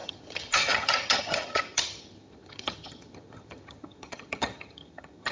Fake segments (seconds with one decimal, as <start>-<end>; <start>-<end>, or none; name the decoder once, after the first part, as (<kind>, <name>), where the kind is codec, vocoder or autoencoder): 0.0-5.3 (vocoder, HiFi-GAN)